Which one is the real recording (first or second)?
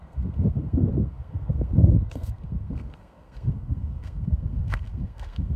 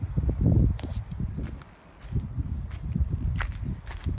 second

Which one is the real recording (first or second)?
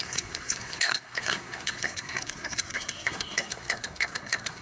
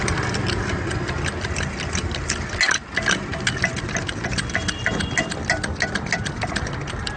second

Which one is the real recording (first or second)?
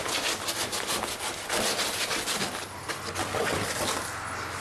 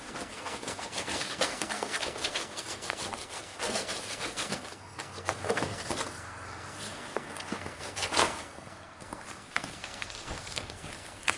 first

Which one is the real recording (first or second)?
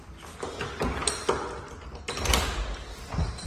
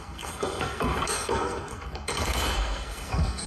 first